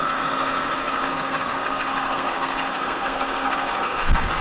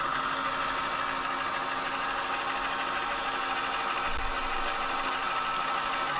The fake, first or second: first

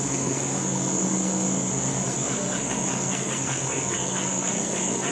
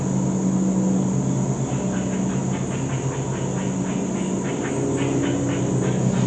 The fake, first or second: first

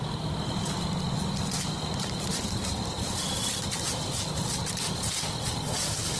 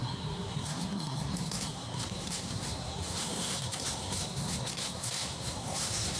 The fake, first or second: second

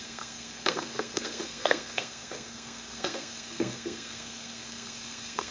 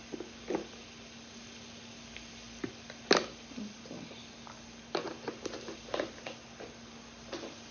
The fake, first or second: first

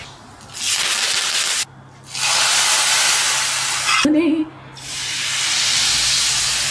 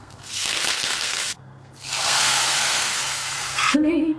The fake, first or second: second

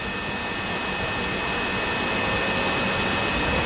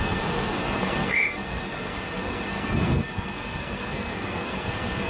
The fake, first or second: second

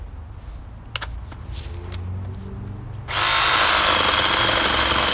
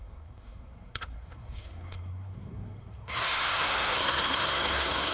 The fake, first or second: second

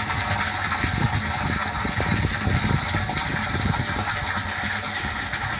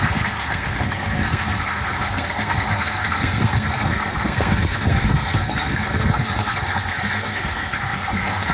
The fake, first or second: second